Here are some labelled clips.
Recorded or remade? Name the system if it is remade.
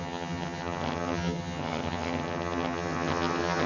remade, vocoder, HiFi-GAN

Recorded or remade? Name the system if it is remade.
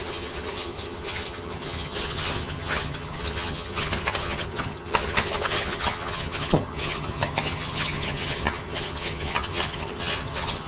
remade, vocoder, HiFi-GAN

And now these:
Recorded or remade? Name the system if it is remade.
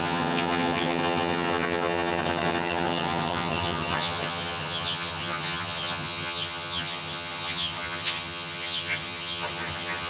remade, vocoder, HiFi-GAN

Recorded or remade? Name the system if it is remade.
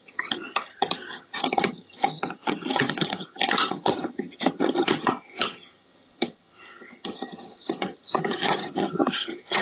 remade, vocoder, HiFi-GAN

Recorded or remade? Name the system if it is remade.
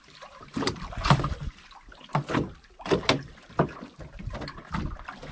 recorded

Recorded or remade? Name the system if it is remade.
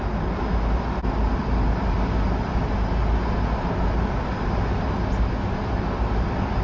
recorded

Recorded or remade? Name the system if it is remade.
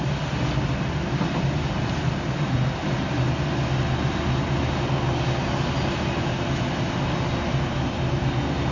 recorded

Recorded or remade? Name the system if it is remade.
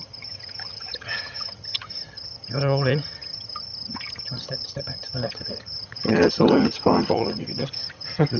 remade, vocoder, HiFi-GAN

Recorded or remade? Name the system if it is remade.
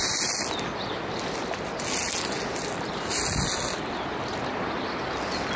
recorded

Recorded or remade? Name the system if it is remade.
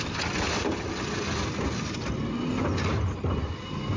recorded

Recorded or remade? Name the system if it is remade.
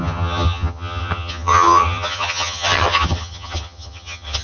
remade, vocoder, HiFi-GAN